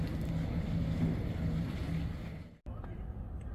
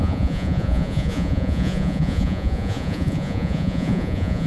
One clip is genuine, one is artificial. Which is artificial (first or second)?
second